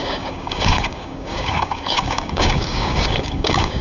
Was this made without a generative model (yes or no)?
no